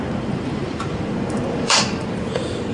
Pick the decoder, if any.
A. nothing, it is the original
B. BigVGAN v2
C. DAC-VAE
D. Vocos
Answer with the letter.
B